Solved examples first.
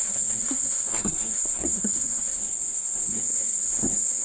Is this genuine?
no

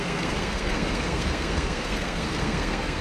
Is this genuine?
no